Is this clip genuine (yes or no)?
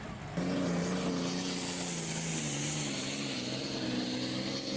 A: yes